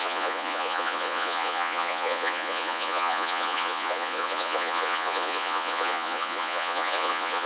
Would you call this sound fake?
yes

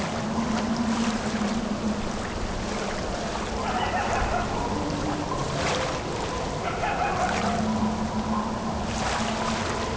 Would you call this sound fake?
no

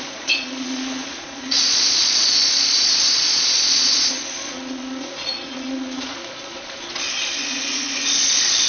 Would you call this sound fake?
yes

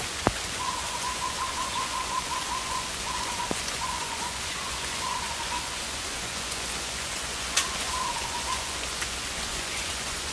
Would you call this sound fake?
yes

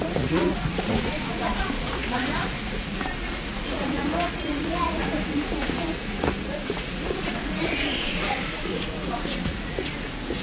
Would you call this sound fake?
yes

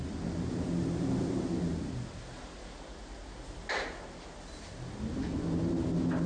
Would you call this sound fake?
no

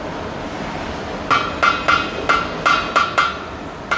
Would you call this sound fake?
no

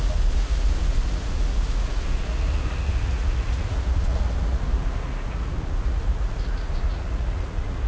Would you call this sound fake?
yes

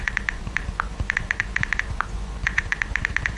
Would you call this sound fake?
yes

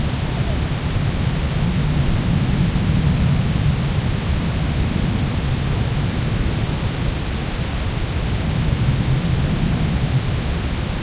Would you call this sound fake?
no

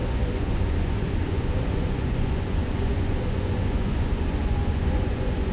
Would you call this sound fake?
yes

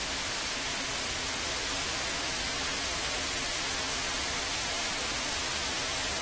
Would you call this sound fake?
no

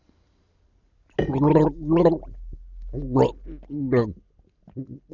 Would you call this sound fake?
no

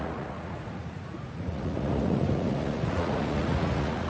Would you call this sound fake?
yes